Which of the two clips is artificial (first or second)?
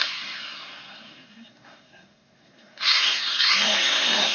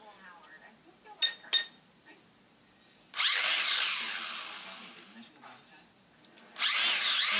first